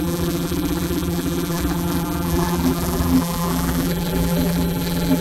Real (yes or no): no